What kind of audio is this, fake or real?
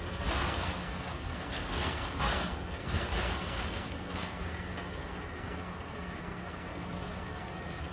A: fake